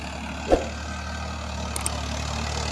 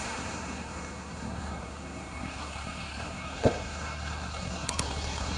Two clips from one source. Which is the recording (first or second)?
first